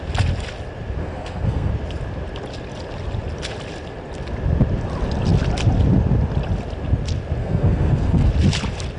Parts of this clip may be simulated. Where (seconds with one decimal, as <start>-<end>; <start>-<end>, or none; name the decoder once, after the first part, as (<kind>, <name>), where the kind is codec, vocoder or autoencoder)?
1.0-1.7 (codec, SNAC); 7.4-8.3